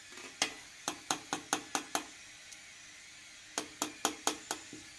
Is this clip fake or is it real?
real